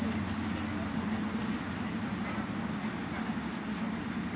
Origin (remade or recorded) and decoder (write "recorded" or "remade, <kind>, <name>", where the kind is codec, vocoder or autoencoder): recorded